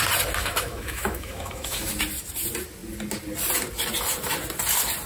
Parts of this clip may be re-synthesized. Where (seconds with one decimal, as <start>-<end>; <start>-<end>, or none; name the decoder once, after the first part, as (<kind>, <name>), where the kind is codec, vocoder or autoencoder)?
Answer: 0.4-1.9 (autoencoder, DAC-VAE)